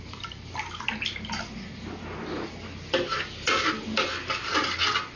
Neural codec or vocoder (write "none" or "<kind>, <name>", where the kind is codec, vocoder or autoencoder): none